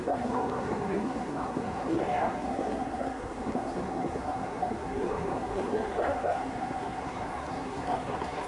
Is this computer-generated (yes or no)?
yes